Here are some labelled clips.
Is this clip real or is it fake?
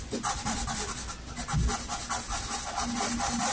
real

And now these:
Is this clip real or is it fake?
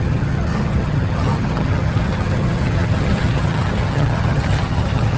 fake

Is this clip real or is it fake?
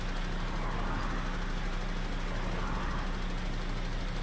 real